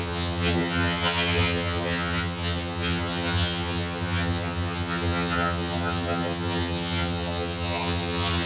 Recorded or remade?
remade